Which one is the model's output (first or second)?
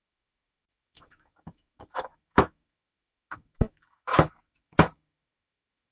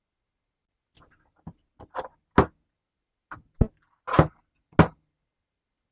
first